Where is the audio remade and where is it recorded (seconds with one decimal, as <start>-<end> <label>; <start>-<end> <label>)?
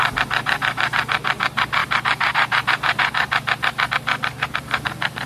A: 0.0-5.3 recorded